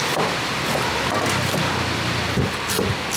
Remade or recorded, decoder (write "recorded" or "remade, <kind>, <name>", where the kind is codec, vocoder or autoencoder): recorded